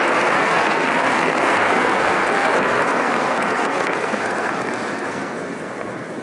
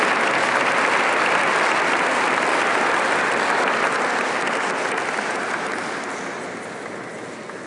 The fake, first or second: first